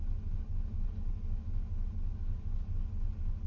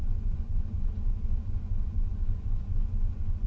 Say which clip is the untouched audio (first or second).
first